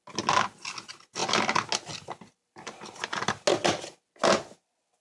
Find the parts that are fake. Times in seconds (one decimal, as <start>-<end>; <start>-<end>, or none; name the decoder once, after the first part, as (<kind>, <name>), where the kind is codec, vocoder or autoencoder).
none